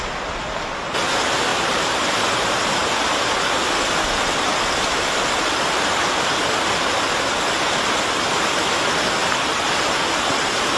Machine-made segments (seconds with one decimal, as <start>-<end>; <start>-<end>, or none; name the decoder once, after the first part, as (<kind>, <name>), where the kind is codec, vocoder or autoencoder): 1.5-4.0 (vocoder, BigVGAN v2); 4.5-6.5